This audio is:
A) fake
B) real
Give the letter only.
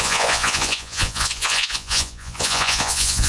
A